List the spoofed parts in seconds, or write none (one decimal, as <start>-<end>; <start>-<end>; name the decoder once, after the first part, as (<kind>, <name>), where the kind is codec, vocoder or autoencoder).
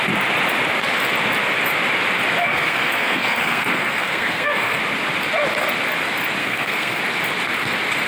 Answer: 2.4-4.8 (codec, SNAC); 6.4-7.0